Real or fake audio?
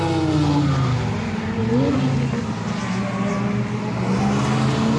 real